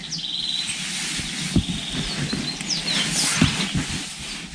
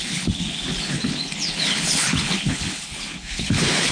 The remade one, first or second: second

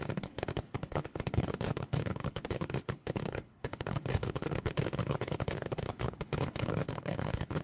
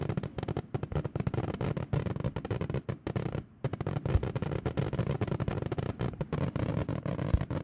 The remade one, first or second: first